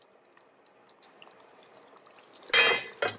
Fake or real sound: real